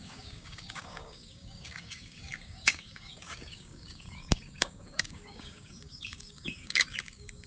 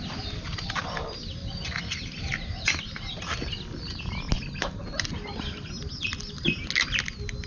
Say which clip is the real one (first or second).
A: second